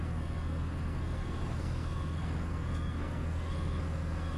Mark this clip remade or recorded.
remade